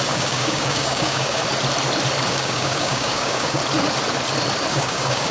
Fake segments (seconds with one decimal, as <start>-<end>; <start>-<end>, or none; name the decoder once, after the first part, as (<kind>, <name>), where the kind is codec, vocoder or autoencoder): 0.0-1.4 (codec, DAC); 2.3-3.6; 4.7-5.3